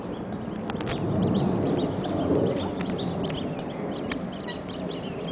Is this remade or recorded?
recorded